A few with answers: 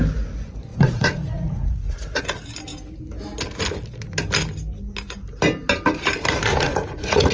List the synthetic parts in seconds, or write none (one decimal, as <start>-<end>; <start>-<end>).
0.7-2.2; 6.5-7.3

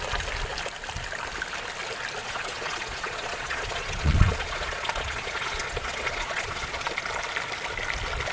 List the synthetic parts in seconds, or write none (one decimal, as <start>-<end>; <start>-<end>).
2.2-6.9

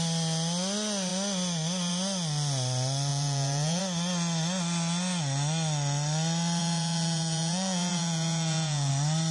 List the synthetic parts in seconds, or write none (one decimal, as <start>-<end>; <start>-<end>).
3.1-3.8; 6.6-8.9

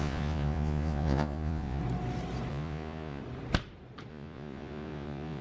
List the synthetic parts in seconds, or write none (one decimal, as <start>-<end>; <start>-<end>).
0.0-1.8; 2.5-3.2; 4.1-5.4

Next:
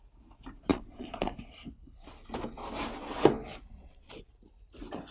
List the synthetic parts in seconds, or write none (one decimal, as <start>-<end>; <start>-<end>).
0.7-1.3; 3.5-4.1

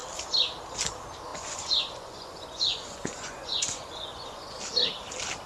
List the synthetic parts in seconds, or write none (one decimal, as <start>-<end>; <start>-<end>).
1.3-4.6

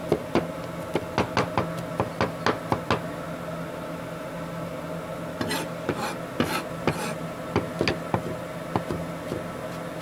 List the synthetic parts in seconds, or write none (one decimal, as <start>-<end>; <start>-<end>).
none

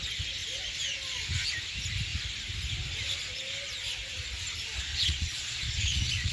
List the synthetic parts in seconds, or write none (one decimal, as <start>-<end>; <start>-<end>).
4.7-6.3